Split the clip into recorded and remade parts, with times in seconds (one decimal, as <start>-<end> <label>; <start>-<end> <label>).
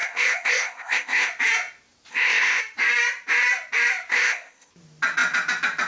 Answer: 0.0-1.3 remade; 1.3-2.1 recorded; 2.1-2.6 remade; 2.6-4.1 recorded; 4.1-4.7 remade; 4.7-5.9 recorded